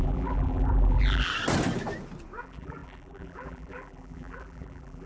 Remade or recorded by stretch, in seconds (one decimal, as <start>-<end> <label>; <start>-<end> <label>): 0.0-1.3 remade; 1.3-2.4 recorded; 2.4-5.1 remade